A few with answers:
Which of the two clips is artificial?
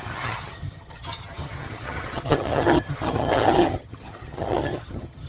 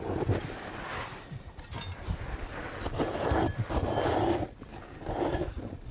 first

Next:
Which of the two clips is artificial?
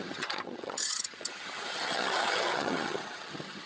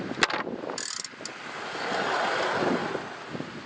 first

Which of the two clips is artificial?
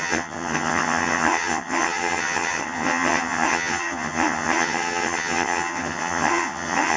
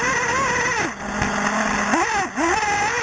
first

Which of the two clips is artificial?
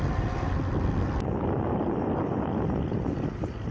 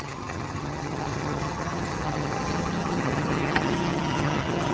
second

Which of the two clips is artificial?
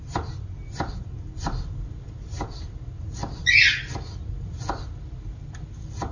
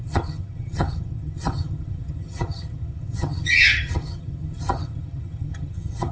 second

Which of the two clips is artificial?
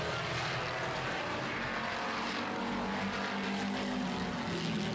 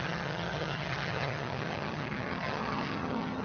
second